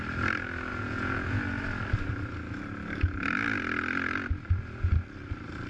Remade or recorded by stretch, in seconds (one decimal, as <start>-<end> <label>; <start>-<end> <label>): 0.0-0.7 recorded; 0.7-1.4 remade; 1.4-5.7 recorded